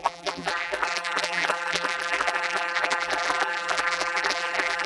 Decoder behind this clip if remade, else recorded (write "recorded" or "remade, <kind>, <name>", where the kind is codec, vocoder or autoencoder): remade, vocoder, BigVGAN v2